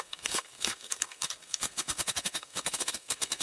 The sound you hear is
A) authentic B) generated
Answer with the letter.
B